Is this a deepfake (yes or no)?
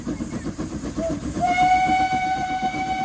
yes